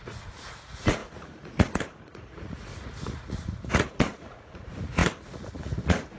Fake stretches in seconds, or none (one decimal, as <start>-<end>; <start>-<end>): 0.0-6.2